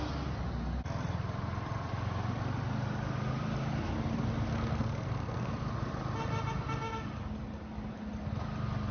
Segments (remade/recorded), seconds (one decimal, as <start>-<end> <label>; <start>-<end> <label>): 0.0-4.5 recorded; 4.5-5.5 remade; 5.5-8.9 recorded